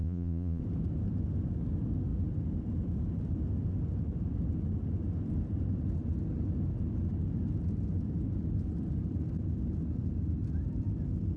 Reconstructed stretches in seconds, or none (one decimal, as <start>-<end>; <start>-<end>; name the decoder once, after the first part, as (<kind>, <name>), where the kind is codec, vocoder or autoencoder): 0.0-0.6 (vocoder, Vocos)